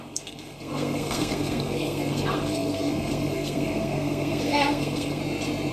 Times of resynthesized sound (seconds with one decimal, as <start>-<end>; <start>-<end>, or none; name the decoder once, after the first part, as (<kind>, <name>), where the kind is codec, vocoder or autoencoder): 0.0-5.2 (codec, SNAC)